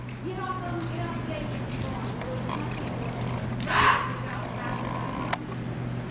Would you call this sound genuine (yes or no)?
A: yes